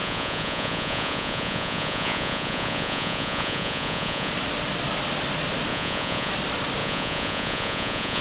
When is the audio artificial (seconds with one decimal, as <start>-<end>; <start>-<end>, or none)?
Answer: 0.0-4.3; 5.7-6.3; 6.8-8.2